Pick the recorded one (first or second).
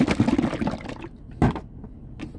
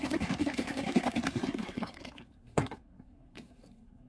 first